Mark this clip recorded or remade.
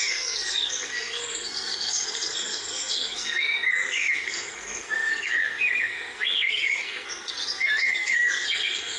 remade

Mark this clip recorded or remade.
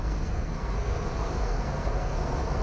remade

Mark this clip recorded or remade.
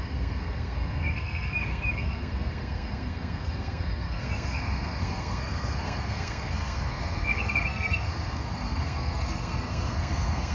remade